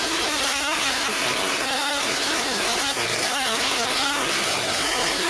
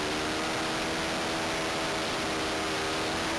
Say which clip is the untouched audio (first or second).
second